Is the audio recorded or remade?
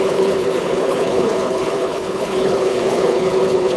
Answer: remade